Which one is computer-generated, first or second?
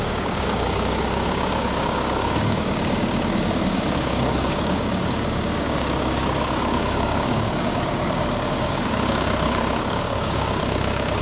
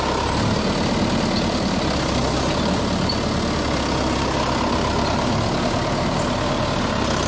first